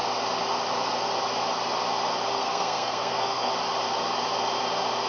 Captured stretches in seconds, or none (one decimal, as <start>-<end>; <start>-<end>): 0.0-2.3; 3.5-5.1